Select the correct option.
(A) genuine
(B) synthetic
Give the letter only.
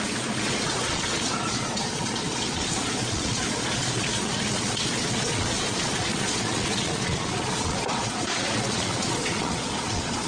B